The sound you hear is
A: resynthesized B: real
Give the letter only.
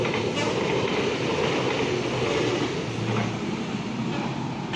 B